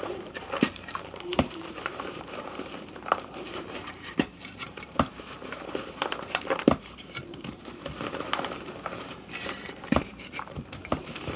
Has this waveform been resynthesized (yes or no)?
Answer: yes